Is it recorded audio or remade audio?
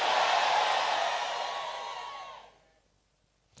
recorded